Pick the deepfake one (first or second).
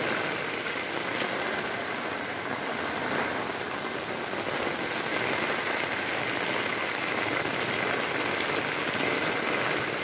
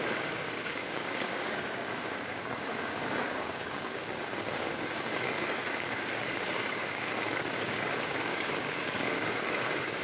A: second